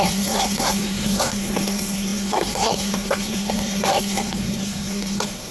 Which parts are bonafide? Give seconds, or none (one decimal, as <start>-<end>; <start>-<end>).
none